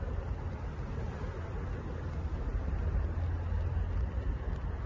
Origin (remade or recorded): recorded